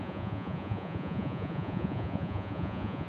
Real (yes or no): no